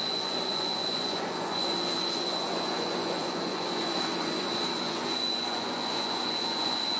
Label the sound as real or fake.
fake